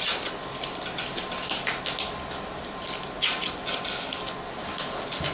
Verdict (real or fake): real